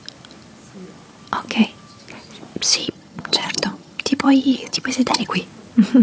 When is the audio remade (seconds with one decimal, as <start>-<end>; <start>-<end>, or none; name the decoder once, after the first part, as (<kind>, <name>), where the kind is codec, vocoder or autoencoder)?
2.8-5.3 (vocoder, HiFi-GAN)